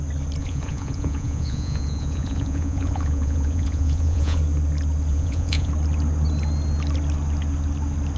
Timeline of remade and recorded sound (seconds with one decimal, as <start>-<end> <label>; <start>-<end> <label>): 0.0-0.4 recorded; 0.4-4.4 remade; 4.4-5.1 recorded; 5.1-5.7 remade; 5.7-8.2 recorded